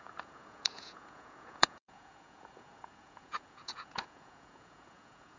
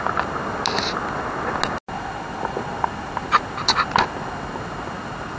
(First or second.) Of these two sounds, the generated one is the first